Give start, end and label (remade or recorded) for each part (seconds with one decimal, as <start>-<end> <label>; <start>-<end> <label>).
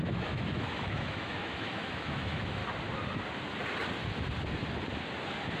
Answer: 0.0-2.6 remade; 2.6-5.6 recorded